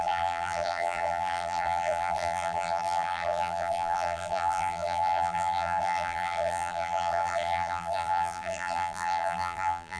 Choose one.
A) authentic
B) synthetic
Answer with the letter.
B